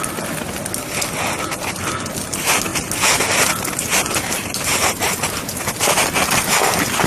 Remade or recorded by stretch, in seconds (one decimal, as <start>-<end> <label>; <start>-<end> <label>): 0.0-7.1 recorded